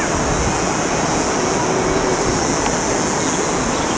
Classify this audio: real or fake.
real